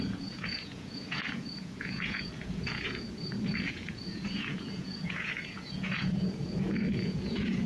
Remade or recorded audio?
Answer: remade